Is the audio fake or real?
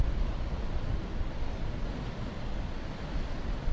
fake